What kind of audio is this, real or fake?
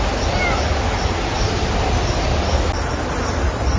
real